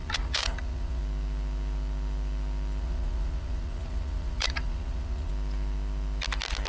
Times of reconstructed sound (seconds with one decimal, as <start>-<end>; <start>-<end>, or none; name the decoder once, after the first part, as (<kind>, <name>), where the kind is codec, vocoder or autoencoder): 0.0-1.0 (vocoder, Vocos); 2.8-5.3